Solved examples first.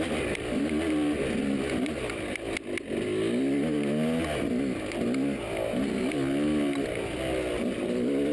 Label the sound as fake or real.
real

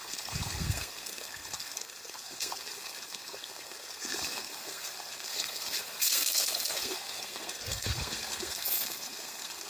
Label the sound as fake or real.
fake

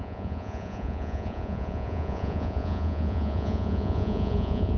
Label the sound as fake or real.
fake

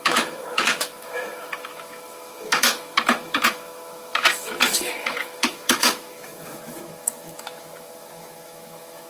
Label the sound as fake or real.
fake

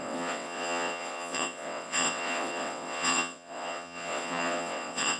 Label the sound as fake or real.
fake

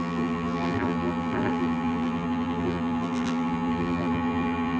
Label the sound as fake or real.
fake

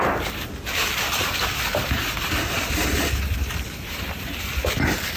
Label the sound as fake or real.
real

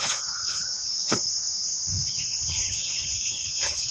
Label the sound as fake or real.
fake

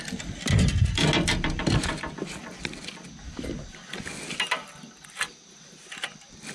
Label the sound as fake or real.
real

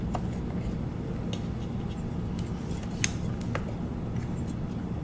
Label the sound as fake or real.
real